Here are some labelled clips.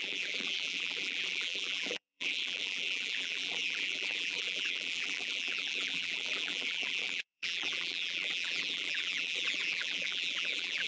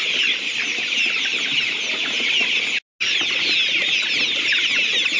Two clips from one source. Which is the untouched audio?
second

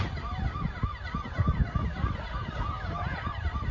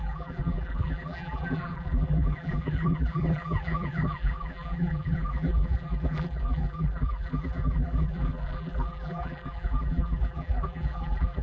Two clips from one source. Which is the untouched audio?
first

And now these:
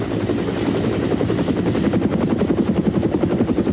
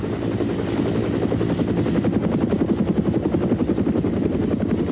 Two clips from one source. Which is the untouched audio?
second